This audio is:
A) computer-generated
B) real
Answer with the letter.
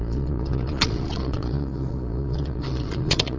A